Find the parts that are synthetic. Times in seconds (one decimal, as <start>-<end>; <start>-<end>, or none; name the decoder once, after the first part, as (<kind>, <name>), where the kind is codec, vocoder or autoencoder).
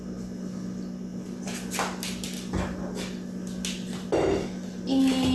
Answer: none